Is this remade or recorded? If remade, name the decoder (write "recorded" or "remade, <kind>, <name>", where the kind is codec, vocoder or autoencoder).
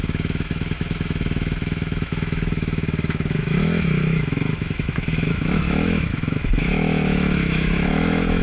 remade, autoencoder, DAC-VAE